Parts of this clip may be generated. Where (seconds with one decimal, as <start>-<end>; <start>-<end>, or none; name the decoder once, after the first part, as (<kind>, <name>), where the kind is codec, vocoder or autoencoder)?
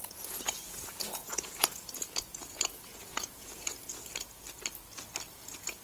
0.0-4.0 (vocoder, Vocos); 5.3-5.8